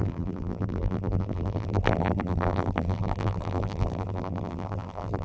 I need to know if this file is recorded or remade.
remade